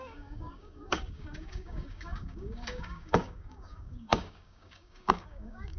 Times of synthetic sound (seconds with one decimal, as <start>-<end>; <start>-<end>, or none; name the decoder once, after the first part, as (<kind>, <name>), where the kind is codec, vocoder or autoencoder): 0.0-5.8 (codec, DAC)